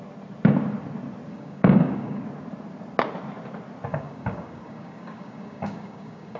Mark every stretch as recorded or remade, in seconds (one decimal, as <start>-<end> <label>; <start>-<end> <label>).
0.0-1.3 recorded; 1.3-2.2 remade; 2.2-3.9 recorded; 3.9-6.4 remade